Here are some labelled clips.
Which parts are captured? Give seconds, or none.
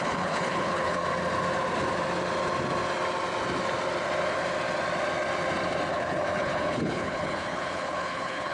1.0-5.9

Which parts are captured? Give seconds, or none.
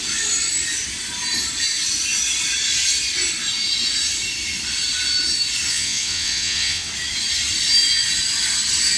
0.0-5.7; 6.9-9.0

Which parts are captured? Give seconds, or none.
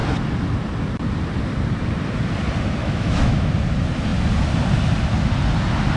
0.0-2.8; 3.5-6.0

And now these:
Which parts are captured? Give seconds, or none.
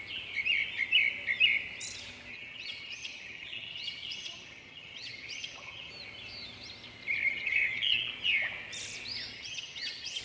0.0-2.3; 5.9-7.3; 8.1-9.3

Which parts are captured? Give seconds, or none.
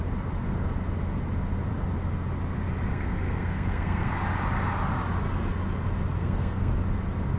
0.0-2.9; 4.1-6.2; 6.7-7.4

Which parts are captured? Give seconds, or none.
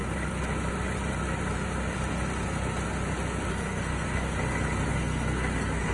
0.0-3.5; 4.3-4.9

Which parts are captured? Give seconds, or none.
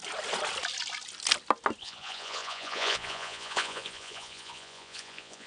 0.0-1.8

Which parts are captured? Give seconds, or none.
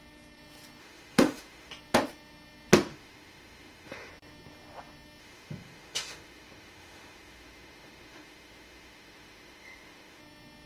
0.0-0.8; 1.7-2.9; 4.1-5.2; 10.2-10.7